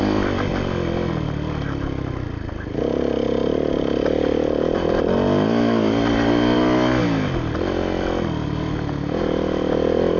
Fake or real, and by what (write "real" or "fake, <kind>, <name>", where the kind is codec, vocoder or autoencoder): real